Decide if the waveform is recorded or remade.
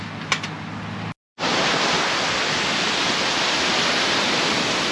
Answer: recorded